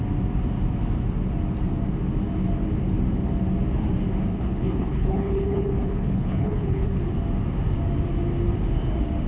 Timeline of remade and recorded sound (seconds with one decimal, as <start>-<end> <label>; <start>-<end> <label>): 0.0-4.3 recorded; 4.3-7.0 remade; 7.0-9.3 recorded